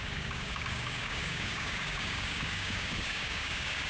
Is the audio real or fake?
fake